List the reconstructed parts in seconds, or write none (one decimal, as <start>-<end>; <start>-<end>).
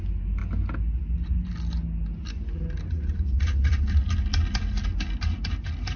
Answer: none